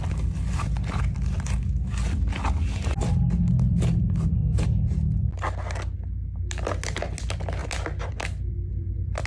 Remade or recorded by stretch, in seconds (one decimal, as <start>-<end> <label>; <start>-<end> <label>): 0.0-4.4 recorded; 4.4-5.3 remade; 5.3-9.3 recorded